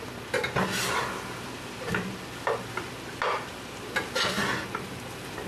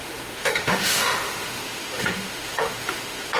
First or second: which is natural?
first